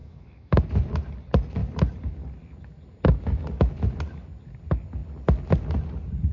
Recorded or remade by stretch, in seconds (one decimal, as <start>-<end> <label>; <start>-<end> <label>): 0.0-0.6 remade; 0.6-6.3 recorded